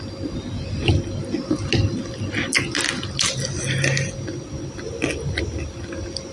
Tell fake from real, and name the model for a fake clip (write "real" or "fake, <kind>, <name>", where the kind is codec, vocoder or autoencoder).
real